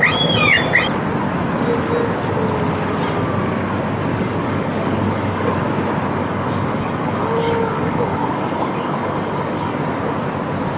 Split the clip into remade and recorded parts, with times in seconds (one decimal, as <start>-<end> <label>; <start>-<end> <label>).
0.0-4.1 recorded; 4.1-5.5 remade; 5.5-6.2 recorded; 6.2-9.8 remade; 9.8-10.8 recorded